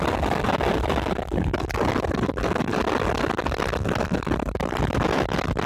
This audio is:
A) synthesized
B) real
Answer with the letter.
B